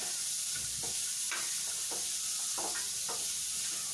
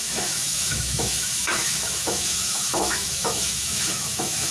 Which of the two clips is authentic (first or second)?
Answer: first